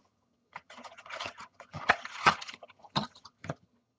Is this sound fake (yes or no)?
yes